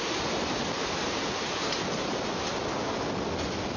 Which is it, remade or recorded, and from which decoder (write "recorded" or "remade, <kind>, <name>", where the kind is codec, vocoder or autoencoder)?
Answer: recorded